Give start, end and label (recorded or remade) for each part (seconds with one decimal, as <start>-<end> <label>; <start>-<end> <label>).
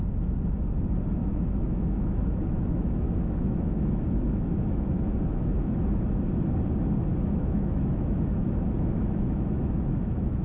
0.0-1.2 recorded; 1.2-6.1 remade; 6.1-7.1 recorded; 7.1-10.4 remade